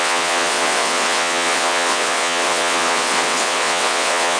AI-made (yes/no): yes